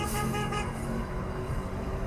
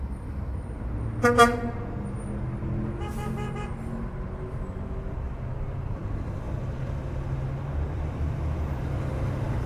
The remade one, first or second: first